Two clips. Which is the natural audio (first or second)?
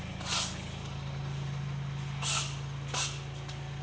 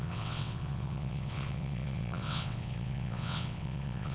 first